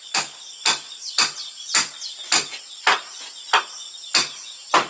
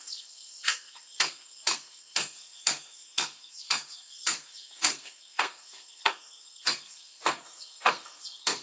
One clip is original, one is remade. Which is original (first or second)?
first